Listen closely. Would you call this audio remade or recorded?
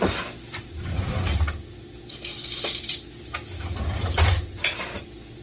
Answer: recorded